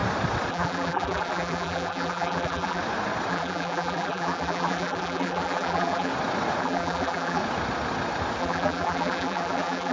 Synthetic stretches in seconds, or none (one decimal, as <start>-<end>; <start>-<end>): 0.5-2.8; 3.3-6.1; 6.6-7.4; 8.4-9.9